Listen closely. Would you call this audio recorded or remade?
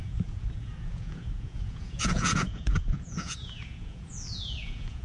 remade